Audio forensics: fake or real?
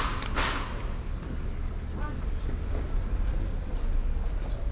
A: real